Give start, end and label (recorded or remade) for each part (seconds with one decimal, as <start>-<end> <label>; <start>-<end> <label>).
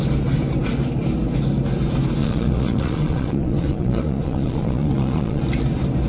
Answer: 0.0-2.2 recorded; 2.2-5.4 remade; 5.4-6.1 recorded